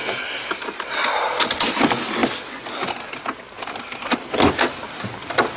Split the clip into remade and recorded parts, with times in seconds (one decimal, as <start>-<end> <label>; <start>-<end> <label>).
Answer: 0.0-5.6 recorded